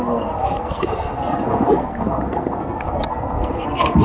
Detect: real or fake fake